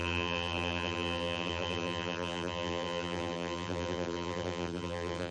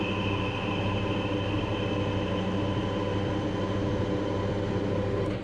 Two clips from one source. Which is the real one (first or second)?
second